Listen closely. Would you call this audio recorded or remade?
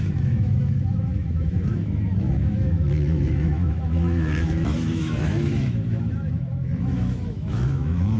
remade